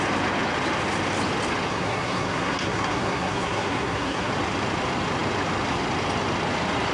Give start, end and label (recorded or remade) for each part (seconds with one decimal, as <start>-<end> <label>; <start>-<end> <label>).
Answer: 0.0-1.7 recorded; 1.7-4.3 remade; 4.3-6.9 recorded